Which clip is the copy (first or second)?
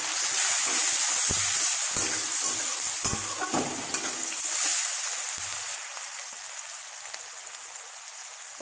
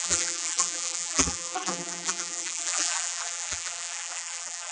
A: second